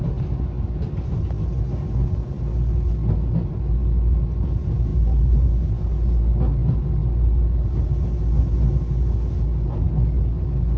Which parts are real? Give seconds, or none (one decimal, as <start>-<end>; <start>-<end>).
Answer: 0.0-10.8